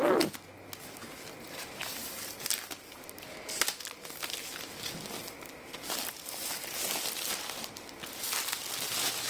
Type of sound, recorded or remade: recorded